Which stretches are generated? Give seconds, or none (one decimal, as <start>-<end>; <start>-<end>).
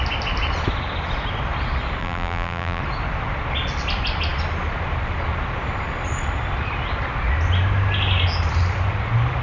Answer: 2.0-2.8